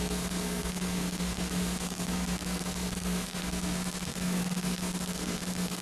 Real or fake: fake